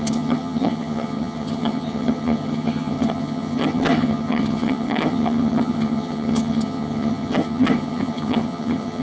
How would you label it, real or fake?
fake